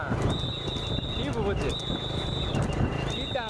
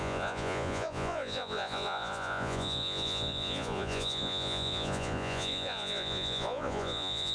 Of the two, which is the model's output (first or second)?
second